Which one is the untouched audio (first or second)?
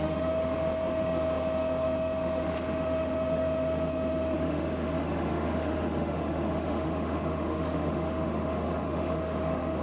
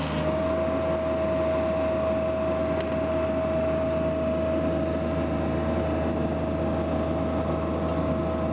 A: second